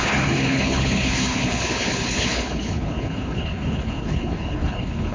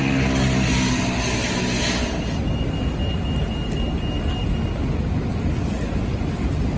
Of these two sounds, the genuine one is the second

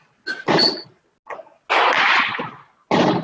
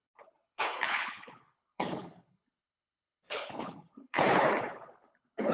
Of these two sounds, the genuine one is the first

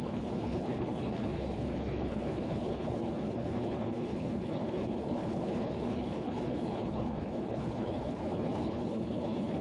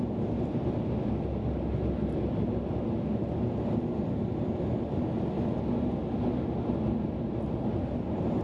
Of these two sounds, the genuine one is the second